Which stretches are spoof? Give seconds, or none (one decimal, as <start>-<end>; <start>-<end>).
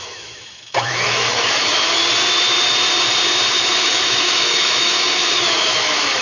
0.0-2.0; 3.5-6.2